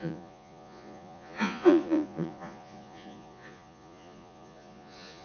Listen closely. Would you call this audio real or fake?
fake